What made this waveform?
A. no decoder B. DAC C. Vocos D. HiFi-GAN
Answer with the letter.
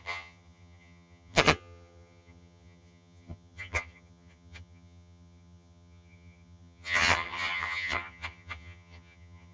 D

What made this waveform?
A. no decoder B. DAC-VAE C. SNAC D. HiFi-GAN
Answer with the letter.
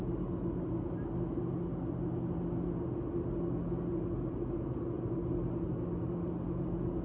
A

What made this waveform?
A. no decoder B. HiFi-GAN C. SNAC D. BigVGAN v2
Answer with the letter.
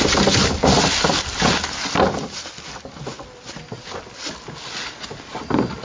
A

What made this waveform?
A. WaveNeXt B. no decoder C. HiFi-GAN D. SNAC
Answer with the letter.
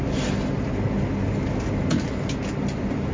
B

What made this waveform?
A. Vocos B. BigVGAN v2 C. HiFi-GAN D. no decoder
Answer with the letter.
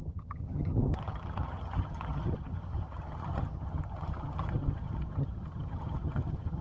C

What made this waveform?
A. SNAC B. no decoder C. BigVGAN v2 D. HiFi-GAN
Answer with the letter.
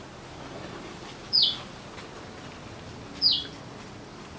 B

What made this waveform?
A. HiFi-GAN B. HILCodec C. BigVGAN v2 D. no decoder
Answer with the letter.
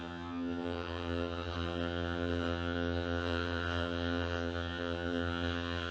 A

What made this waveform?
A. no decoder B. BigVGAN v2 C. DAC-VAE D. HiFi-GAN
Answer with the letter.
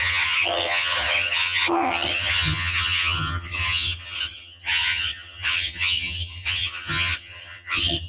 D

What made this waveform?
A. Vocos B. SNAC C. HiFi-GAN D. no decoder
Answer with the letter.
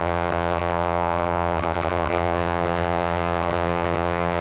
C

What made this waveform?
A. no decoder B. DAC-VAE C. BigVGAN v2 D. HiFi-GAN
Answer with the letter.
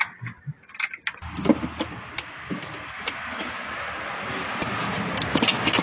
A